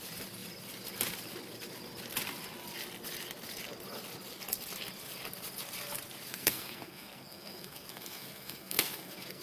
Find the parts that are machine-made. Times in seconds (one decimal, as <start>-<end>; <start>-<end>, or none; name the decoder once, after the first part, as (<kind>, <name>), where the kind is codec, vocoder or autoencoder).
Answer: 6.3-9.4 (codec, SNAC)